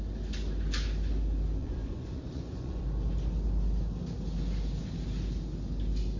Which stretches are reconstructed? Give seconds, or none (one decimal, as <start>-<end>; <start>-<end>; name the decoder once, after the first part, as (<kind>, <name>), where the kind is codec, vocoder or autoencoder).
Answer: 1.6-2.8 (vocoder, Vocos)